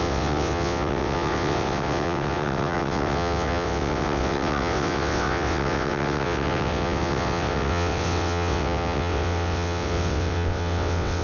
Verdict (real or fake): fake